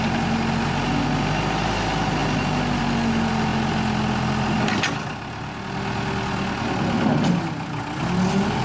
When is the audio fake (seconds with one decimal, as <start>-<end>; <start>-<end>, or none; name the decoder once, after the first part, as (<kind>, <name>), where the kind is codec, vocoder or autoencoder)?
none